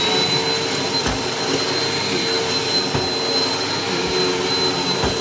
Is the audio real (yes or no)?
yes